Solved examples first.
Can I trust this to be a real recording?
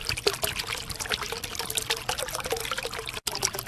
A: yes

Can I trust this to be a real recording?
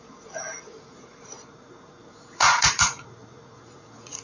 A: no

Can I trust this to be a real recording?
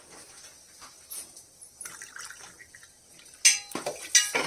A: yes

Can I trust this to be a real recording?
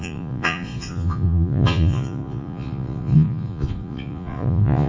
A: no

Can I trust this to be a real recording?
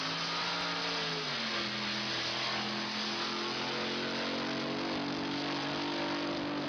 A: yes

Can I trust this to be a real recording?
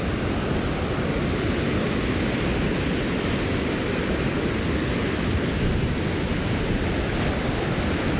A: yes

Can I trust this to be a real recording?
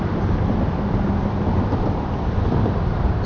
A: yes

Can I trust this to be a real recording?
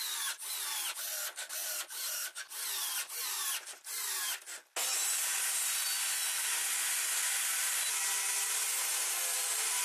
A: yes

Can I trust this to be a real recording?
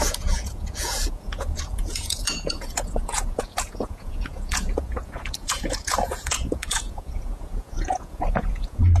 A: no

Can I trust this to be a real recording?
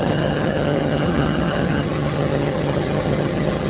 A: no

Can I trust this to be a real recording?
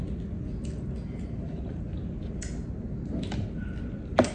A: yes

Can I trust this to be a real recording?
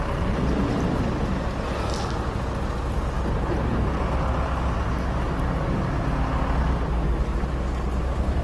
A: yes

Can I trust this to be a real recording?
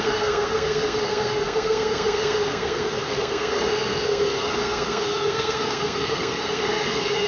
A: no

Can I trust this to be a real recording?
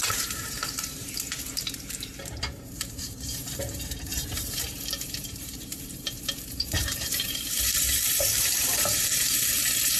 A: no